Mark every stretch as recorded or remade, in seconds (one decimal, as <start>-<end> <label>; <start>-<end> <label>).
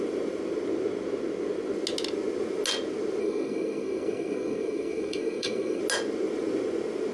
0.0-3.2 recorded; 3.2-5.8 remade; 5.8-7.1 recorded